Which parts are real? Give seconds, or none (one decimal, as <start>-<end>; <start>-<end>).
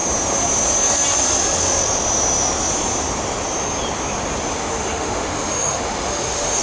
0.0-4.5